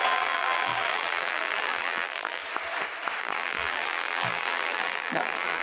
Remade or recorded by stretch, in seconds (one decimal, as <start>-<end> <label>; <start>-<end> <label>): 0.0-2.4 remade; 2.4-3.2 recorded; 3.2-5.6 remade

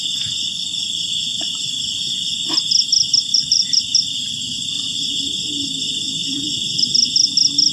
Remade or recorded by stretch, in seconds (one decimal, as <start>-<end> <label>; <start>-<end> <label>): 0.0-0.4 recorded; 0.4-2.5 remade; 2.5-3.3 recorded; 3.3-5.2 remade; 5.2-6.2 recorded; 6.2-6.9 remade; 6.9-7.7 recorded